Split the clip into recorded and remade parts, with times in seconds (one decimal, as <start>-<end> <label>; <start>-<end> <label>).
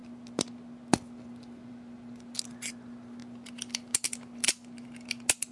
0.0-5.5 recorded